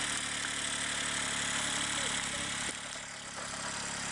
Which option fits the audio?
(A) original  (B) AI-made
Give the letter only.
A